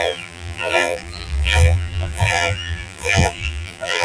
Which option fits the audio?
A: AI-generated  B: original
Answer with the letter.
A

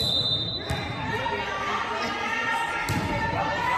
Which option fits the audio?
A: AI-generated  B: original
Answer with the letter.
B